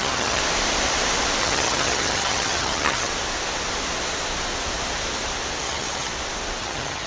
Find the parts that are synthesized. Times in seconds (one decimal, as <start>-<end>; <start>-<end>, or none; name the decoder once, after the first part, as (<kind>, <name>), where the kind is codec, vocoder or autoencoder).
0.0-0.4 (vocoder, HiFi-GAN); 1.4-3.1; 5.6-6.1; 6.6-7.1